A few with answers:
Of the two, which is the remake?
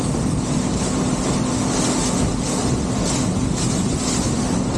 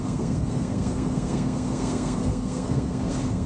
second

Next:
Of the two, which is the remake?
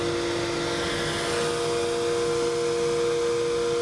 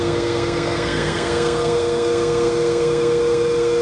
second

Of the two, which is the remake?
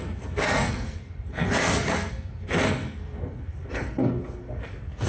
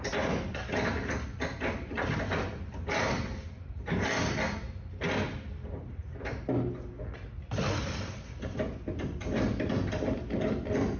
first